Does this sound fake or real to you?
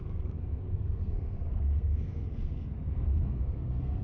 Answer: fake